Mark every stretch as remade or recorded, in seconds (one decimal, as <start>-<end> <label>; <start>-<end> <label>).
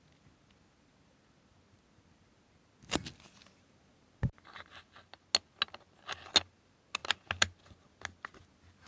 0.0-8.9 recorded